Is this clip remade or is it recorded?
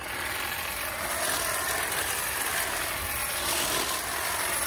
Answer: recorded